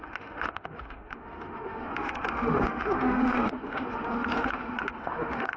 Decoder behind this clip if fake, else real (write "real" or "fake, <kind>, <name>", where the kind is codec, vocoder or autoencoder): fake, autoencoder, DAC-VAE